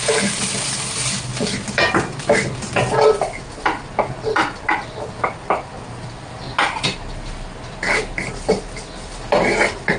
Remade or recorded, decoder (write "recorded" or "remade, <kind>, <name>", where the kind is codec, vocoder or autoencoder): recorded